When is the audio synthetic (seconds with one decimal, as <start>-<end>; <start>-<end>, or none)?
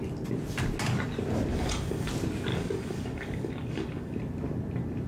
1.5-2.1; 2.5-4.2